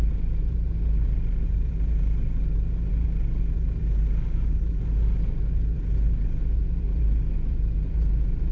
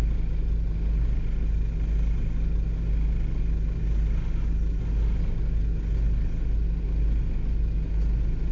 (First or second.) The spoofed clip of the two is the first